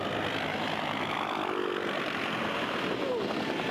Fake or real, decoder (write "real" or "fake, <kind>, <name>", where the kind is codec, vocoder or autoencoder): real